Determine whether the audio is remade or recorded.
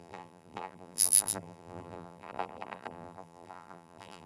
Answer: remade